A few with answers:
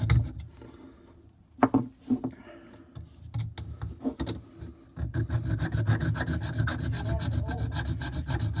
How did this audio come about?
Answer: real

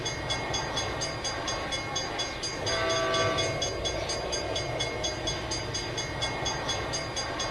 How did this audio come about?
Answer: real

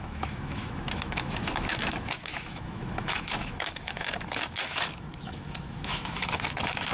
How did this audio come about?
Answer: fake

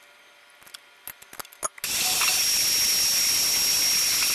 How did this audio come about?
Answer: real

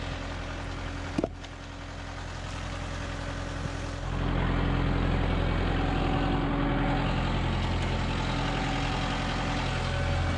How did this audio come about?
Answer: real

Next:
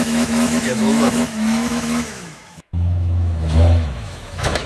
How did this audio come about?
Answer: fake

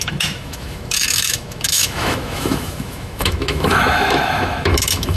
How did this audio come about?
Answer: fake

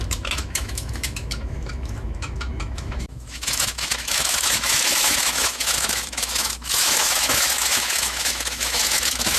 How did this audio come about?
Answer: fake